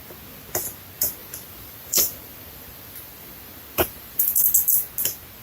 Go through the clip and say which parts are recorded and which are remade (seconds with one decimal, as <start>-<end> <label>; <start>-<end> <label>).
0.0-1.2 recorded; 1.2-4.4 remade; 4.4-5.4 recorded

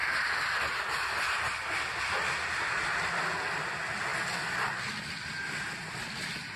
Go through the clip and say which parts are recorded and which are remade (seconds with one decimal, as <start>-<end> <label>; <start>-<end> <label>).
0.0-6.6 recorded

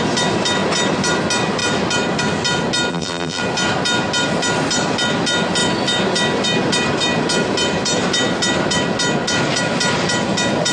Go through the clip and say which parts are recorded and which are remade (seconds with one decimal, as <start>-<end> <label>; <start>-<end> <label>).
0.0-2.9 recorded; 2.9-3.4 remade; 3.4-10.7 recorded